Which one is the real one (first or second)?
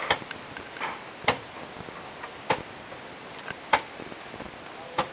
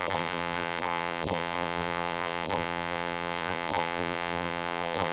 first